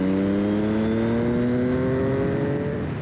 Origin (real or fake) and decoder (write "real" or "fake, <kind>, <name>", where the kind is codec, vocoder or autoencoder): real